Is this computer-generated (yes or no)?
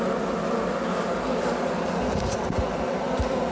no